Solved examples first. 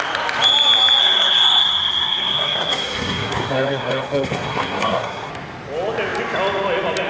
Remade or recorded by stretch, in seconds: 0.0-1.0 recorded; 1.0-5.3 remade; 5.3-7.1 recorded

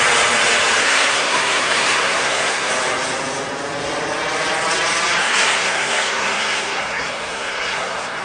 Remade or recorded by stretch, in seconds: 0.0-0.8 recorded; 0.8-2.7 remade; 2.7-5.2 recorded; 5.2-8.2 remade

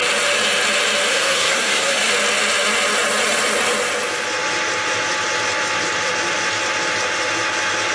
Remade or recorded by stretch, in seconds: 0.0-1.1 recorded; 1.1-2.1 remade; 2.1-7.9 recorded